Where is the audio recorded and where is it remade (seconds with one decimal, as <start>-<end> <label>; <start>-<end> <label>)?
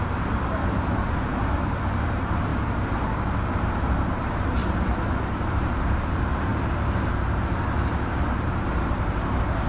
0.0-9.7 remade